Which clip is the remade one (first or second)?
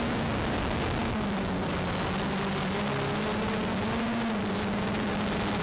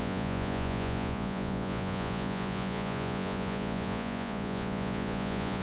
second